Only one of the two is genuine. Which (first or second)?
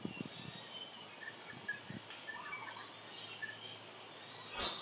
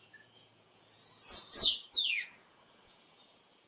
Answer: first